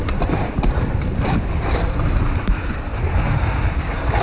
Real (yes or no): no